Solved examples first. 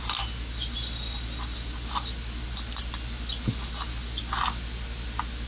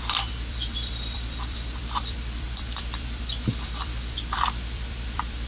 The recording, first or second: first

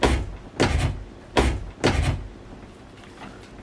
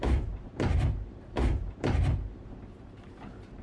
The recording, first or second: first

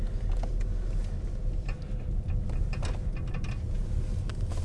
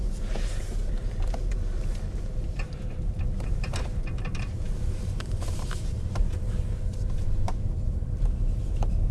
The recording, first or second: first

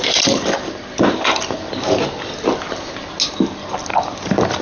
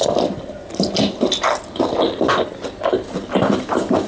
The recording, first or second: first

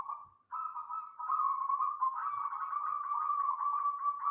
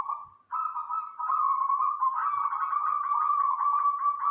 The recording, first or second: first